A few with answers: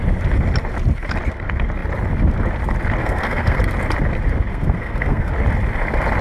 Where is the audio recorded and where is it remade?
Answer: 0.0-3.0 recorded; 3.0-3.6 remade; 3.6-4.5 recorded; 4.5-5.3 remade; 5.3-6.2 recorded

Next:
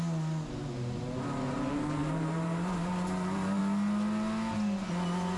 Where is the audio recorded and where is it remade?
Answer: 0.0-2.0 recorded; 2.0-3.6 remade; 3.6-5.4 recorded